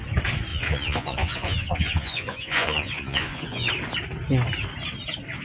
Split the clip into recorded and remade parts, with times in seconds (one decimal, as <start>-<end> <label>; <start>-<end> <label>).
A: 0.0-0.5 recorded; 0.5-3.7 remade; 3.7-5.4 recorded